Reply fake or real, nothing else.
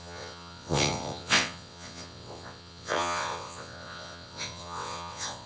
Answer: fake